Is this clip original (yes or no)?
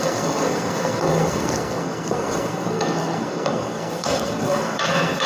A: no